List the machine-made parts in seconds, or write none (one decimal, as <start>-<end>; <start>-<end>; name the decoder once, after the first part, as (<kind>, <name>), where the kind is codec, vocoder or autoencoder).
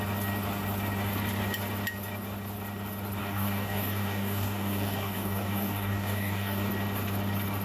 3.2-6.7 (codec, DAC)